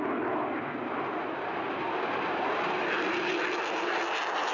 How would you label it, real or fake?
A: real